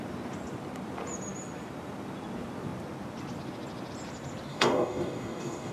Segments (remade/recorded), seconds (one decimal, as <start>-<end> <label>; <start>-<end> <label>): 0.0-4.5 recorded; 4.5-5.7 remade